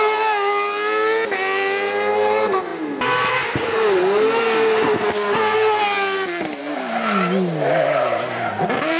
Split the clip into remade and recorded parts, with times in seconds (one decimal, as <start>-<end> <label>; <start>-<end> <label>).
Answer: 0.0-9.0 recorded